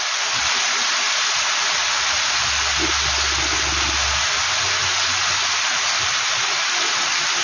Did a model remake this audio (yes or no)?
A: no